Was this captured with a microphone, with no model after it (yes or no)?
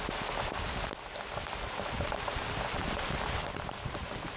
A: yes